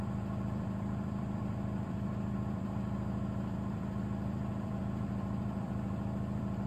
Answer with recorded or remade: remade